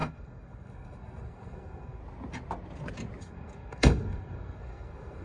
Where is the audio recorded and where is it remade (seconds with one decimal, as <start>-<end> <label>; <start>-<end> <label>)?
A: 0.0-2.0 remade; 2.0-3.2 recorded; 3.2-5.2 remade